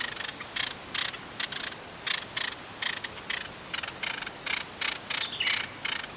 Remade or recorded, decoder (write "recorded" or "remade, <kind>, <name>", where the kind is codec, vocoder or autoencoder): recorded